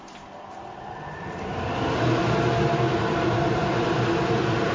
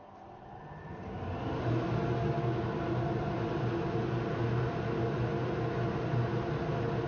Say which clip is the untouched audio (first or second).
second